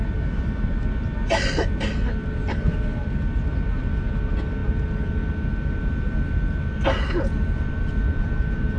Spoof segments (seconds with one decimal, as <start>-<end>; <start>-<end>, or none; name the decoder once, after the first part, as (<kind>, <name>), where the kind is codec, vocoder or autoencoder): none